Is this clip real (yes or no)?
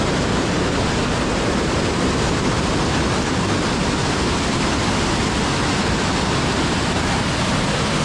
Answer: yes